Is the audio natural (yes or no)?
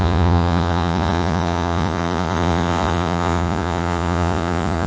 no